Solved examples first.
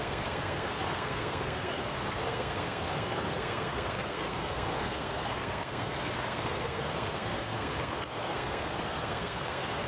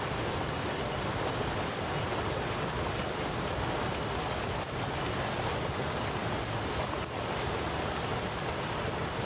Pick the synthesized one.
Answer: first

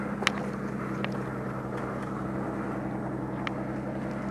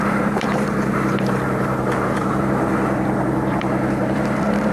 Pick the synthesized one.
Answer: second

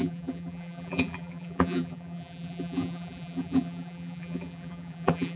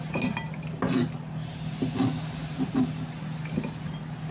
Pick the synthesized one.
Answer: first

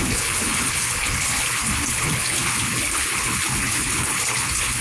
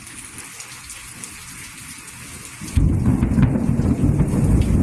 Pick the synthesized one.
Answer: first